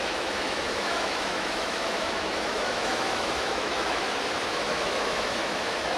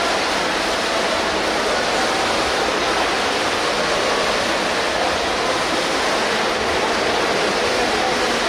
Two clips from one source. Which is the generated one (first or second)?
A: first